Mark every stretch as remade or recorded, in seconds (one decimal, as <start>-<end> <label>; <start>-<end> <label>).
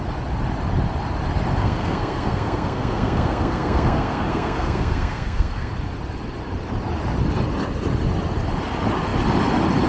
0.0-1.6 recorded; 1.6-5.7 remade; 5.7-9.9 recorded